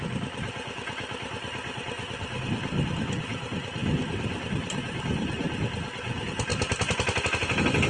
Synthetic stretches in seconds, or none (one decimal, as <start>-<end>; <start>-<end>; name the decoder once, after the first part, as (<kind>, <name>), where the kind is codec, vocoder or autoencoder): none